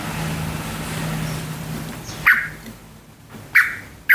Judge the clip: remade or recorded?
recorded